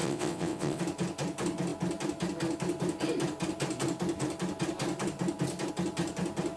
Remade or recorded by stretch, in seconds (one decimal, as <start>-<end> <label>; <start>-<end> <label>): 0.0-0.8 remade; 0.8-6.6 recorded